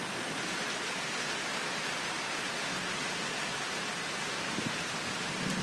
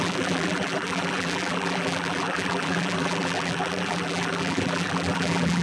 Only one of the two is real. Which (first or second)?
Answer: first